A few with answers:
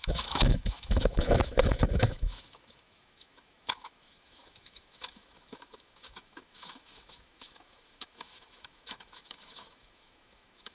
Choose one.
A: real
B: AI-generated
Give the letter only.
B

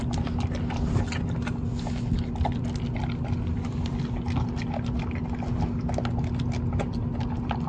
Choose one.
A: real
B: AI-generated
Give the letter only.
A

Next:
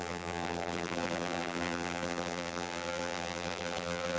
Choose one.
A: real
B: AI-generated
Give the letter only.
B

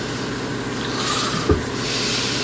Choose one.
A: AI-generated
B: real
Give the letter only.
B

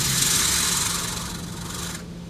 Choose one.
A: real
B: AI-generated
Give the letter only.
A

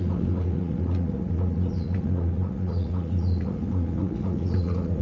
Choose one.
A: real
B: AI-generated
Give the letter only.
B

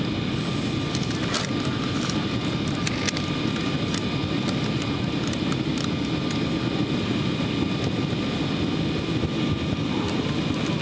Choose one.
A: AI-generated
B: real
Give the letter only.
B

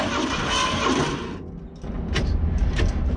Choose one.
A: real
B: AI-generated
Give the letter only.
A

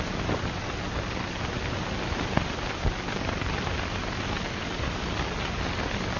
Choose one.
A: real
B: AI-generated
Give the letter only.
A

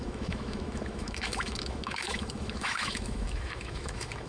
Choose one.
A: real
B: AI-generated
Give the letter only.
B